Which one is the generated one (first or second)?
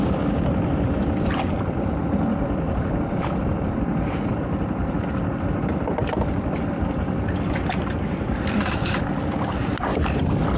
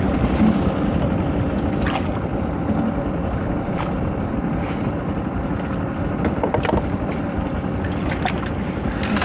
first